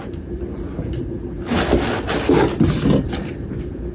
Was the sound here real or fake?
real